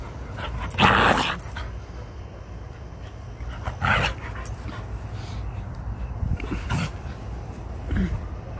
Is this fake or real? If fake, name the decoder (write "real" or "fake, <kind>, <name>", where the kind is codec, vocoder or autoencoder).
real